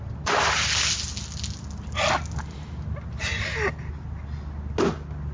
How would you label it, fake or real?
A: real